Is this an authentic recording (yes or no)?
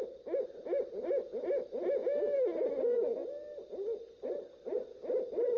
yes